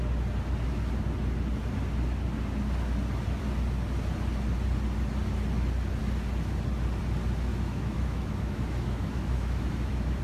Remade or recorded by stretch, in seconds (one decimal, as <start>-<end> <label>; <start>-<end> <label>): 0.0-7.5 recorded; 7.5-10.2 remade

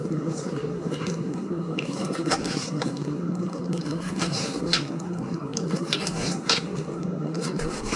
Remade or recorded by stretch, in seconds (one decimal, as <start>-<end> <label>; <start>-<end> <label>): 0.0-8.0 remade

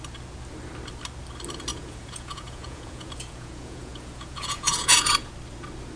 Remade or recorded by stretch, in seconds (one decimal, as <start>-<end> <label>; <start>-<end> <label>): 0.0-1.7 recorded; 1.7-5.3 remade; 5.3-6.0 recorded

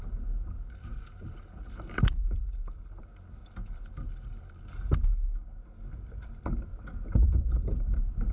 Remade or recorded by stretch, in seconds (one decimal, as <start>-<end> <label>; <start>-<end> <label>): 0.0-5.1 remade; 5.1-7.4 recorded; 7.4-8.3 remade